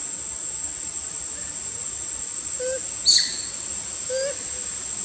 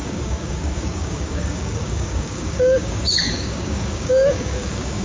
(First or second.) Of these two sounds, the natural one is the first